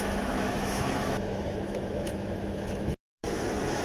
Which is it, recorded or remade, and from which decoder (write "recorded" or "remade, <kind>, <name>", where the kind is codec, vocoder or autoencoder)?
remade, autoencoder, DAC-VAE